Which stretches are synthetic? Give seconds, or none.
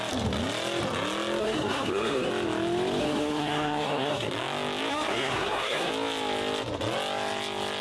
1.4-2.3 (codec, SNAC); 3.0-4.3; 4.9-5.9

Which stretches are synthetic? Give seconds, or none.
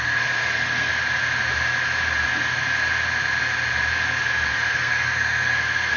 0.0-0.9 (codec, SNAC); 4.5-6.0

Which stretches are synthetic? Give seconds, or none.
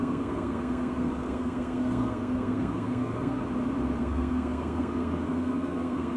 0.0-3.4 (codec, SNAC); 4.0-6.2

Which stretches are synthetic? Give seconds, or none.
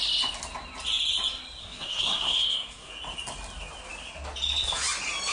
1.6-2.9 (codec, SNAC)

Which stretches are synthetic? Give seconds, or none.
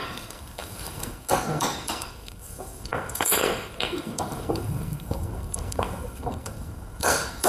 0.0-7.5 (codec, SNAC)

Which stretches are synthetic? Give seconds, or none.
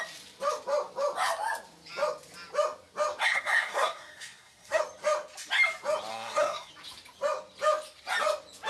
3.2-4.8 (codec, SNAC); 6.1-6.7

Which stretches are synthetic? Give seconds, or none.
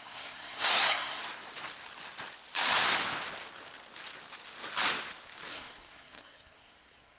0.0-1.2 (codec, SNAC); 5.5-7.2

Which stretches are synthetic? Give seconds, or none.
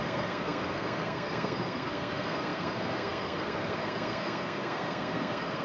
0.0-5.6 (codec, SNAC)